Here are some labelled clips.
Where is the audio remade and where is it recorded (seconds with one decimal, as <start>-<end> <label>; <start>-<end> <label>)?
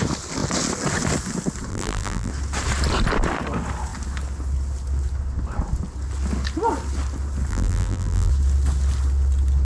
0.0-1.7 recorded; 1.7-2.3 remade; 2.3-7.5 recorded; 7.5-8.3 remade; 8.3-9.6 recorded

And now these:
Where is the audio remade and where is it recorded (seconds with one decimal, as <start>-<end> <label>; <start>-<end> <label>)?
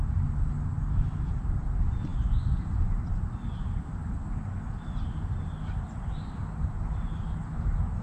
0.0-8.0 recorded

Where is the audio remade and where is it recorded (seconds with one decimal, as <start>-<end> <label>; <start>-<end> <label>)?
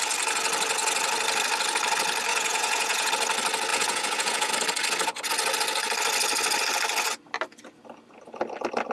0.0-2.3 recorded; 2.3-3.1 remade; 3.1-3.7 recorded; 3.7-4.5 remade; 4.5-8.9 recorded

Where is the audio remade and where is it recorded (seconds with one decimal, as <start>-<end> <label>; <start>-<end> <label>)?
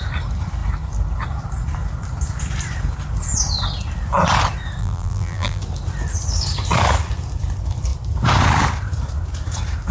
0.0-4.8 recorded; 4.8-5.6 remade; 5.6-9.9 recorded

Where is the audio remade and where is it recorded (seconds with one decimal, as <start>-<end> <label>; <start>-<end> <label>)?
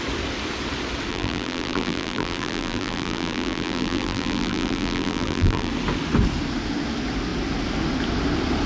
0.0-1.1 recorded; 1.1-5.7 remade; 5.7-8.7 recorded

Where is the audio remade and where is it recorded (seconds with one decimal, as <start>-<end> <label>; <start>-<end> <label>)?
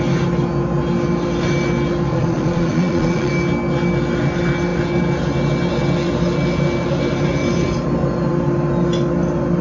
0.0-2.1 recorded; 2.1-3.3 remade; 3.3-9.6 recorded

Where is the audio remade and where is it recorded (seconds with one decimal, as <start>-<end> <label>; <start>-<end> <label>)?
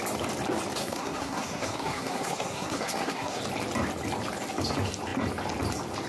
0.0-0.8 recorded; 0.8-3.4 remade; 3.4-6.1 recorded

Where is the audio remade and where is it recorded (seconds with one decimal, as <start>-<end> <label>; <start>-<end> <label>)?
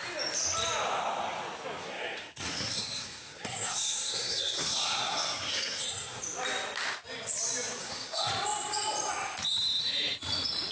0.0-1.8 recorded; 1.8-6.2 remade; 6.2-7.8 recorded; 7.8-8.3 remade; 8.3-10.7 recorded